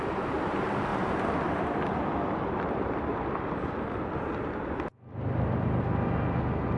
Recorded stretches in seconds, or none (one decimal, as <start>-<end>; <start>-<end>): 0.0-6.8